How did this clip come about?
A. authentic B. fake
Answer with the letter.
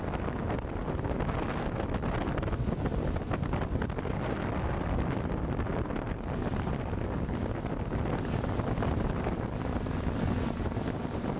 B